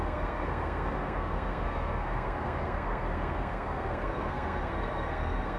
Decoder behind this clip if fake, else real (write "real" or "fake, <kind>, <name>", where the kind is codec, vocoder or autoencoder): fake, codec, SNAC